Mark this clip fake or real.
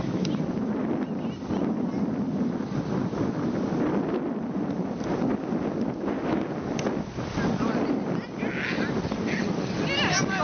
real